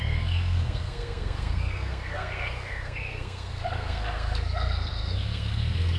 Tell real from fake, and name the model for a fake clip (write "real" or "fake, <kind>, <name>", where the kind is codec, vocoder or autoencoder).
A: fake, codec, SNAC